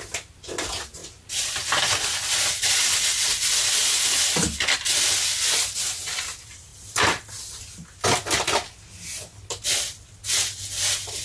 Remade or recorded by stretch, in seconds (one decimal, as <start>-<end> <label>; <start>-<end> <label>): 0.0-11.2 recorded